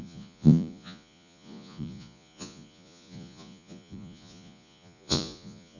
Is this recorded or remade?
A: remade